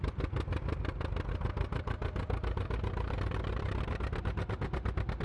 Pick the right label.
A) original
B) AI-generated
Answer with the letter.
A